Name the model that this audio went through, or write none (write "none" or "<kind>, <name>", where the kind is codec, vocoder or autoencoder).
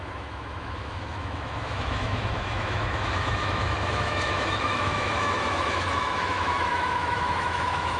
autoencoder, DAC-VAE